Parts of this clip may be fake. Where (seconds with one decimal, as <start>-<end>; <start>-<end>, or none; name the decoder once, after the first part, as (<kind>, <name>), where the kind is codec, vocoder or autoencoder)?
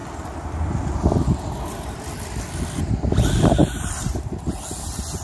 3.6-4.3 (vocoder, BigVGAN v2)